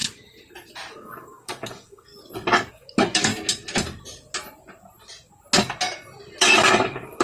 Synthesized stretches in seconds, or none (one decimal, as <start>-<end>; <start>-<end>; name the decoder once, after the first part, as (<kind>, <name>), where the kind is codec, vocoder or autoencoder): 0.9-2.1 (codec, DAC); 2.7-3.3; 6.4-7.2

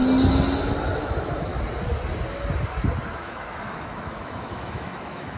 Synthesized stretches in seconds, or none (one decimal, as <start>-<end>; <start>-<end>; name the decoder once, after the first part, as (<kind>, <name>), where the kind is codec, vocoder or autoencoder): 1.0-1.5 (autoencoder, DAC-VAE); 3.2-5.4

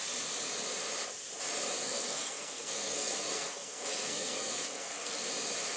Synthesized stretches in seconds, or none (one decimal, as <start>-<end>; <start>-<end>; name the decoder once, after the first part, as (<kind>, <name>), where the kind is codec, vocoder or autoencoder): 1.8-5.3 (codec, SNAC)

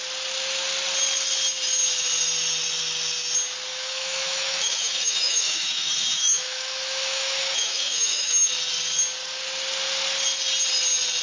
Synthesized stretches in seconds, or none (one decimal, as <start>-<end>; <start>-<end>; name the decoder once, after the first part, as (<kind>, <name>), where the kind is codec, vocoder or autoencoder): 3.7-8.5 (autoencoder, DAC-VAE)

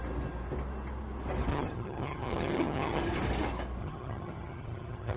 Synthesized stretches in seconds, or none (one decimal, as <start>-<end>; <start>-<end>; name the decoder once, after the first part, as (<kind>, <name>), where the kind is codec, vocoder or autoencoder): 1.5-3.0 (vocoder, HiFi-GAN); 3.8-5.2

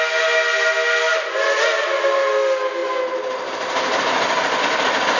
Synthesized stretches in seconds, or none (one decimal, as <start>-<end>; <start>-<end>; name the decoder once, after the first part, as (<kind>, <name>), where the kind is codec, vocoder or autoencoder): none

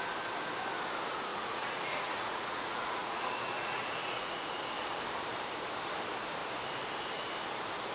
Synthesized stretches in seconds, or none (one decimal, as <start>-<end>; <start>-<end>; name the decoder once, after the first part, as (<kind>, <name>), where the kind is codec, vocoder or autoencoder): 1.3-4.6 (vocoder, Vocos)

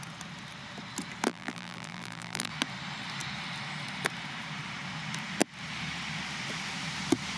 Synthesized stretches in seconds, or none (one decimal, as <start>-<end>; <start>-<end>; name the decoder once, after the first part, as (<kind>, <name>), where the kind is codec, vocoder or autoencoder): 1.3-2.5 (vocoder, BigVGAN v2)